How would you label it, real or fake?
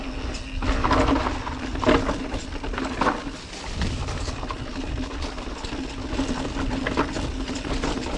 real